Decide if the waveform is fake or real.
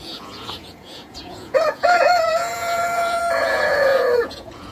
fake